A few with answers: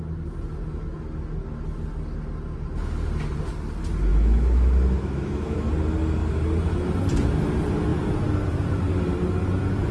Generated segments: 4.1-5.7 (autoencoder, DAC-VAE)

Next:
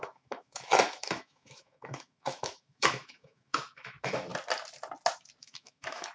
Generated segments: 0.0-4.3 (autoencoder, DAC-VAE); 5.4-6.1

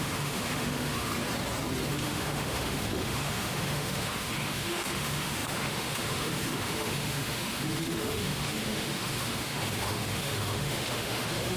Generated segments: 0.0-1.1 (autoencoder, DAC-VAE); 1.9-11.6

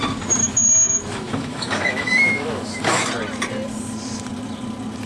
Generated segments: 0.4-3.1 (autoencoder, DAC-VAE)

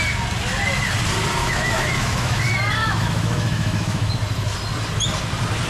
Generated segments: 1.4-2.4 (autoencoder, DAC-VAE); 2.8-4.1

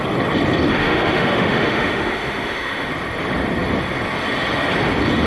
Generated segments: 0.8-2.9 (autoencoder, DAC-VAE)

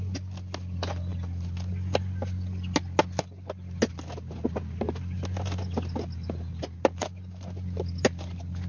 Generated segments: none